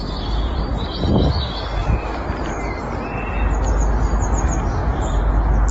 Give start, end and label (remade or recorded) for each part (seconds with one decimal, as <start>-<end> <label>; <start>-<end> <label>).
0.0-0.7 remade; 0.7-1.8 recorded; 1.8-2.8 remade; 2.8-4.8 recorded; 4.8-5.3 remade; 5.3-5.7 recorded